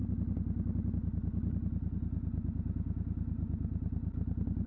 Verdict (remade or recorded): recorded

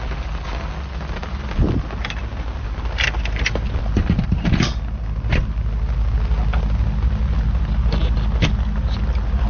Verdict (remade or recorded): recorded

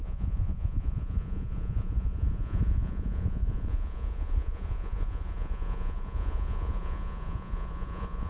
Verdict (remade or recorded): remade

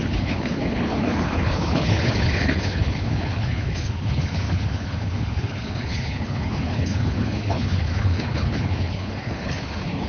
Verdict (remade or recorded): remade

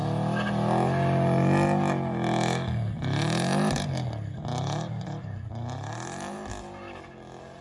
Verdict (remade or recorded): recorded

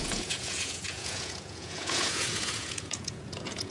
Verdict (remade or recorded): remade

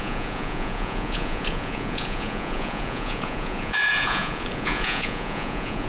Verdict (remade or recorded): remade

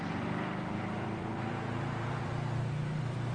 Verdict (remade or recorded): remade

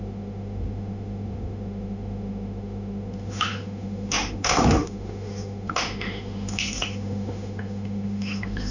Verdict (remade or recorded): remade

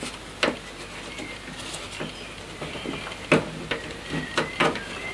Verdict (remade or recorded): recorded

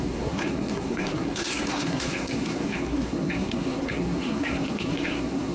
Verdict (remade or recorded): remade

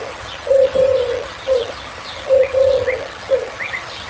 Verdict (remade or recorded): remade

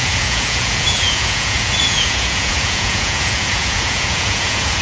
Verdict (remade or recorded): remade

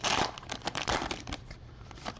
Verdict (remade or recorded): remade